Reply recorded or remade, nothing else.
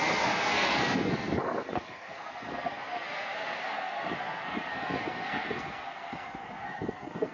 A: remade